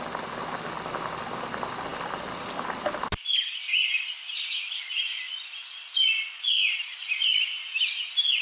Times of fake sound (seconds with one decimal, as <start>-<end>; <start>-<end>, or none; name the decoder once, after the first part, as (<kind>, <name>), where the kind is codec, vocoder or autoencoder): 1.9-3.5 (vocoder, BigVGAN v2)